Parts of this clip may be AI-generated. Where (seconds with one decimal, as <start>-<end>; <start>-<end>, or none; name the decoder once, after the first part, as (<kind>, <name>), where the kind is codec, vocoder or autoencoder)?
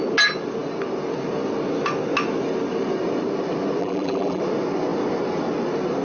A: 3.8-4.4 (vocoder, BigVGAN v2)